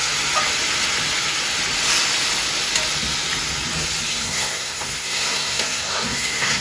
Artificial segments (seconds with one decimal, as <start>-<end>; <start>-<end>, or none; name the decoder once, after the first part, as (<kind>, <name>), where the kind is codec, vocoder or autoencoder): 4.1-6.6 (codec, SNAC)